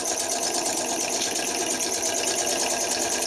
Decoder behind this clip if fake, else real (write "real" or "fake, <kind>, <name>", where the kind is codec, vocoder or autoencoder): real